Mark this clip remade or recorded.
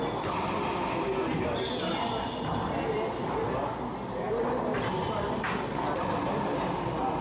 recorded